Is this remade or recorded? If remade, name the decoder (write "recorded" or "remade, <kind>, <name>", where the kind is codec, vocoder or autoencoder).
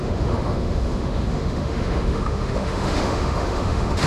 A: remade, autoencoder, DAC-VAE